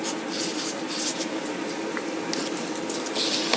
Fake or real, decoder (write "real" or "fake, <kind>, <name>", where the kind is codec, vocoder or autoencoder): real